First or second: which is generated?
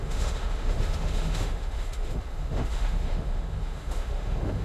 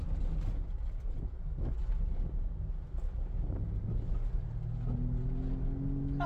first